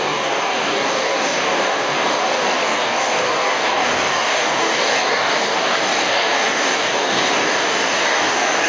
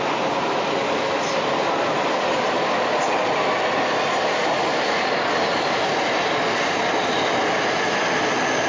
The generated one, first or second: first